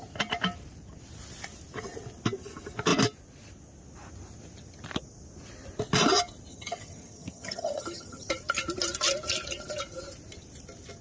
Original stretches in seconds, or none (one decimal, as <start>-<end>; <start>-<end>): 0.0-6.5; 8.3-11.0